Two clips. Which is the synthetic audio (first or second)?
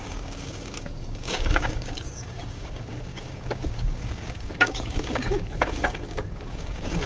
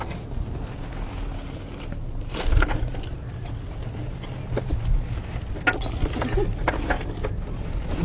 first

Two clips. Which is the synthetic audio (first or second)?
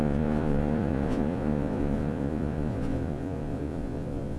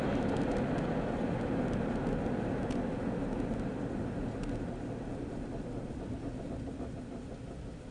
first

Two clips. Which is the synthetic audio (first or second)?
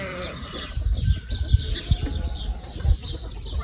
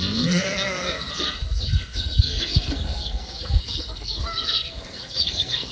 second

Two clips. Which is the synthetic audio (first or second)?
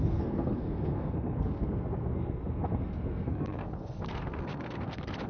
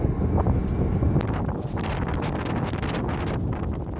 first